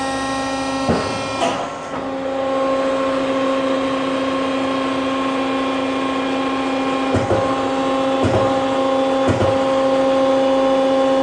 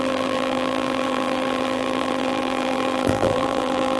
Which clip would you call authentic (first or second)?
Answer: first